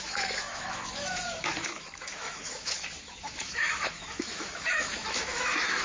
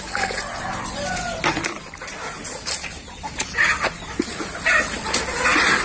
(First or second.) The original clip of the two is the second